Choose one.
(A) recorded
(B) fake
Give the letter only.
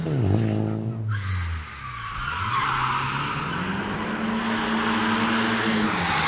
A